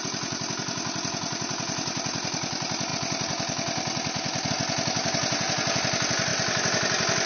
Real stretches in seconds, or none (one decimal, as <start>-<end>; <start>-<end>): 0.0-7.3